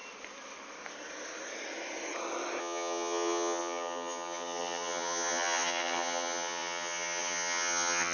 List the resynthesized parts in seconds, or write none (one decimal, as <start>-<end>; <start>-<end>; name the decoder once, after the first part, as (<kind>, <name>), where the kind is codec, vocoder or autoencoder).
2.6-8.1 (vocoder, HiFi-GAN)

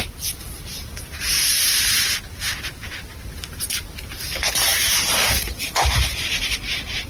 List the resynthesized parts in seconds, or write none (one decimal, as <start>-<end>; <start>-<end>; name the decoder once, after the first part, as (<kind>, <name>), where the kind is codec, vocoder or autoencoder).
0.0-3.1 (vocoder, BigVGAN v2); 3.7-7.1

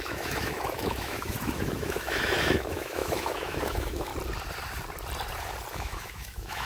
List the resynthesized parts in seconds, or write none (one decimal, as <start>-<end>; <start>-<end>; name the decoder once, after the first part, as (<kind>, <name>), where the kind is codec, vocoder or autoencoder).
0.0-4.1 (autoencoder, DAC-VAE); 5.7-6.7